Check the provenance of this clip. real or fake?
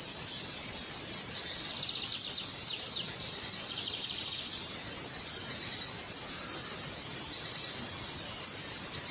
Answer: real